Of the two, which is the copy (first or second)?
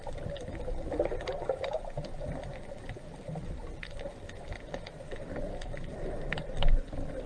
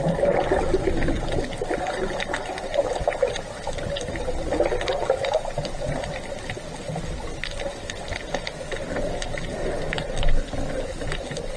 first